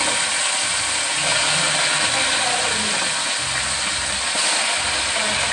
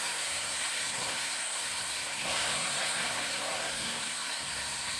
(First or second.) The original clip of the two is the first